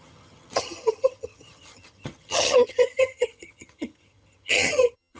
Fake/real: fake